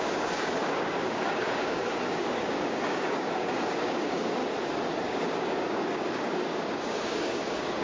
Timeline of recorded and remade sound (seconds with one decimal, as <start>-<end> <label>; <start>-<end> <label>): 0.0-4.4 remade; 4.4-4.9 recorded; 4.9-7.8 remade